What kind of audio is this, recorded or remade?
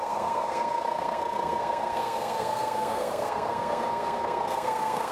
remade